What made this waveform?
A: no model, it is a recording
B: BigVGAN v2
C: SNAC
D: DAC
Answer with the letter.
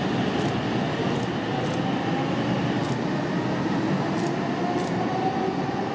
A